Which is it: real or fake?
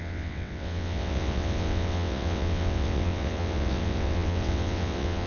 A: fake